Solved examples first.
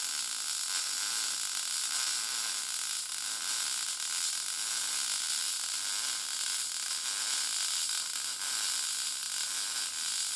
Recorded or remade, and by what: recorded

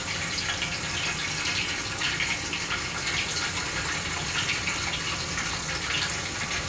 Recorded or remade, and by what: recorded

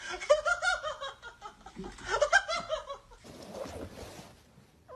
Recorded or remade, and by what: recorded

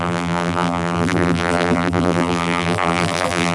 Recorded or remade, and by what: remade, vocoder, BigVGAN v2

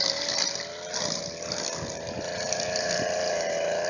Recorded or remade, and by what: remade, vocoder, BigVGAN v2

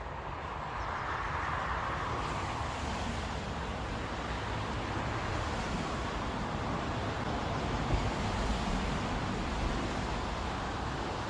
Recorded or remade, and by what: recorded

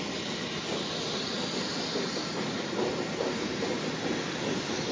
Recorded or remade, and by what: recorded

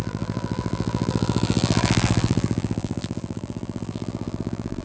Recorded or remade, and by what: remade, vocoder, BigVGAN v2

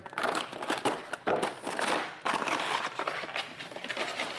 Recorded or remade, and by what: remade, vocoder, BigVGAN v2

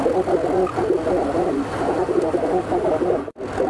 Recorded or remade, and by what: recorded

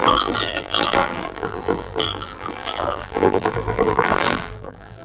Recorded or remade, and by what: remade, vocoder, BigVGAN v2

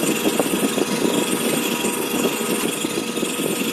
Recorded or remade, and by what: recorded